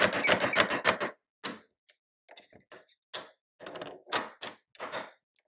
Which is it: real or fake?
real